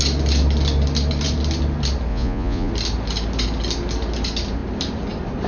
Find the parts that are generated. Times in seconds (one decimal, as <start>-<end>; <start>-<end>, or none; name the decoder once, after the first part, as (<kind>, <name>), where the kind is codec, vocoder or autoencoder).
2.1-2.7 (vocoder, Vocos)